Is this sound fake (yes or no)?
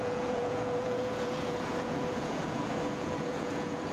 yes